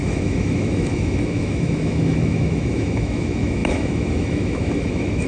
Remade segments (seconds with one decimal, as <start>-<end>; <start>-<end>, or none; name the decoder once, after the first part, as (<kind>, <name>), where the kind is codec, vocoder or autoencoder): 0.0-5.3 (autoencoder, DAC-VAE)